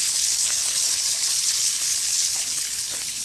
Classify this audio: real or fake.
fake